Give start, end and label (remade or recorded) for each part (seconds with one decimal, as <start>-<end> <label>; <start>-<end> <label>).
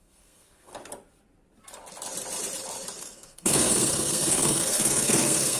0.0-0.7 remade; 0.7-3.0 recorded; 3.0-5.6 remade